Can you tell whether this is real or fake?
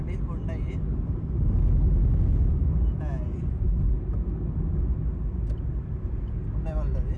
real